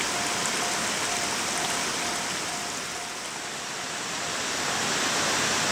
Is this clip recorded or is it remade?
recorded